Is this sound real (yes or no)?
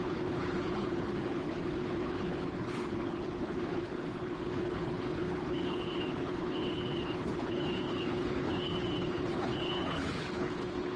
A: no